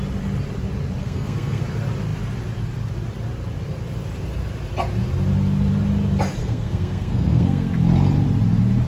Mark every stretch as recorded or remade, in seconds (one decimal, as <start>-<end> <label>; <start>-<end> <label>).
0.0-1.0 recorded; 1.0-1.6 remade; 1.6-6.4 recorded; 6.4-7.7 remade; 7.7-8.9 recorded